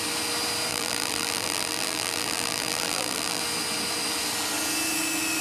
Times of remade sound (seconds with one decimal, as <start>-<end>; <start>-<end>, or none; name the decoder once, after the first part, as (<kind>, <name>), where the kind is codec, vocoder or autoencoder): 0.7-3.4 (vocoder, BigVGAN v2)